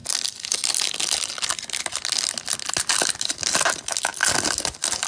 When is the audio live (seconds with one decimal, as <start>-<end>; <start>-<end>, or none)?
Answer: 0.0-5.1